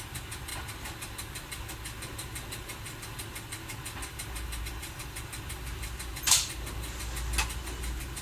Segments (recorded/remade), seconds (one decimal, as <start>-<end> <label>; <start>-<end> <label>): 0.0-8.2 recorded